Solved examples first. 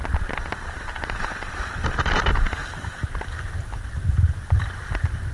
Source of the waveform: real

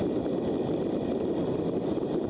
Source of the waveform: real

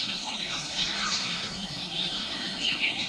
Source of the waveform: fake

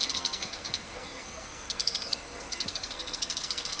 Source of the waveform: fake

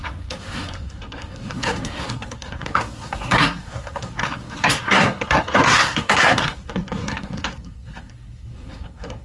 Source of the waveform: fake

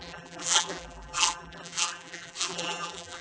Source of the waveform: fake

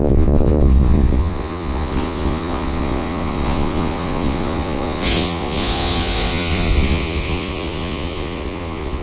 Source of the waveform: fake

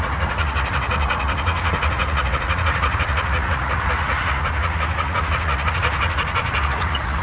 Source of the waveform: fake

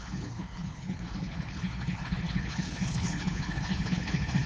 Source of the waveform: fake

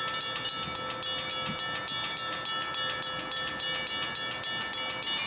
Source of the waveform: real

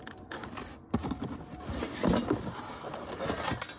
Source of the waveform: real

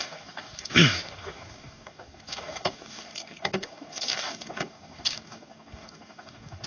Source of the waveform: fake